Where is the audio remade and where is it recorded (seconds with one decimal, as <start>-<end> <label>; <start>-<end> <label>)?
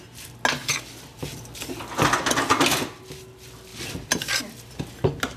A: 0.0-0.6 recorded; 0.6-1.3 remade; 1.3-3.7 recorded; 3.7-4.4 remade; 4.4-5.4 recorded